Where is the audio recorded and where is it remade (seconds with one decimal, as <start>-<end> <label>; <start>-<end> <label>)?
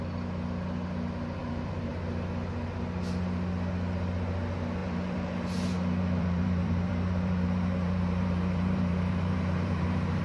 0.0-1.4 recorded; 1.4-1.9 remade; 1.9-4.8 recorded; 4.8-10.2 remade